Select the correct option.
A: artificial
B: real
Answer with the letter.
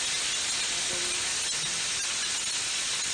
B